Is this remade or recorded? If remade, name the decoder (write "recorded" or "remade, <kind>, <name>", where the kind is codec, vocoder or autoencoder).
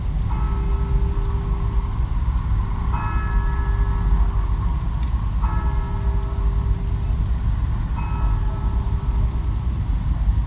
recorded